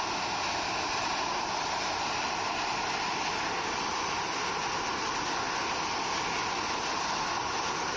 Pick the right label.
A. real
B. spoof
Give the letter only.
A